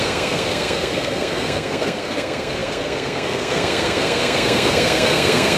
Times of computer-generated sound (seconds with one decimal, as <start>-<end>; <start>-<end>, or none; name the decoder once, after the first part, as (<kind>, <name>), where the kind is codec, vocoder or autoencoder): 0.0-5.6 (codec, SNAC)